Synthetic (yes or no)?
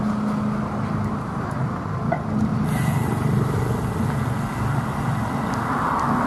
no